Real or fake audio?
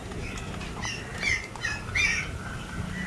real